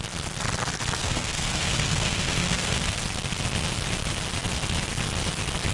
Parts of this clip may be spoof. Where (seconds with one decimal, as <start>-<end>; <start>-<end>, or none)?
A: 1.0-3.0